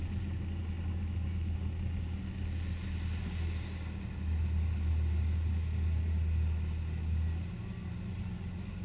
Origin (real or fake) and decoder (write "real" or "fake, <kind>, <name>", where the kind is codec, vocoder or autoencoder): real